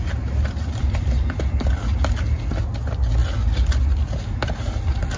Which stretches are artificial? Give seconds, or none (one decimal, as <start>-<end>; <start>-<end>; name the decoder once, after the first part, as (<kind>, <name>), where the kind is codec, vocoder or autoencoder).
none